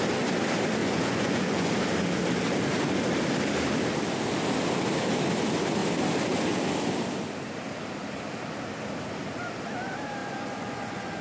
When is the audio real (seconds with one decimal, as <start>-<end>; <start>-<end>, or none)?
0.0-0.8; 1.7-10.2